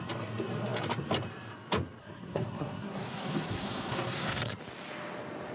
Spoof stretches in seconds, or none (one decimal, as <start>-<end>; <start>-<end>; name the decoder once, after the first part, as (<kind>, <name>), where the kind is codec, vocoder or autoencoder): 2.0-4.6 (codec, SNAC)